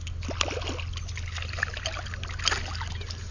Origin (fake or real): real